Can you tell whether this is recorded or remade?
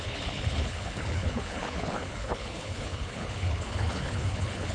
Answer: remade